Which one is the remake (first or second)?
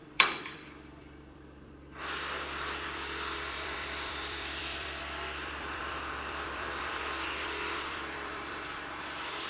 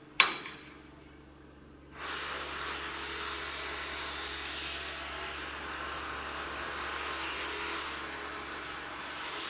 first